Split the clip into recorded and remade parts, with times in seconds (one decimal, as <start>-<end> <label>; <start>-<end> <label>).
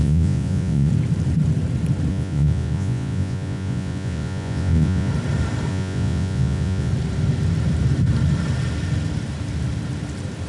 0.0-0.9 remade; 0.9-2.1 recorded; 2.1-5.1 remade; 5.1-5.7 recorded; 5.7-6.9 remade; 6.9-10.5 recorded